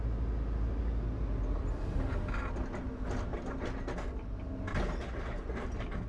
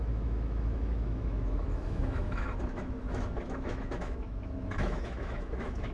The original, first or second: first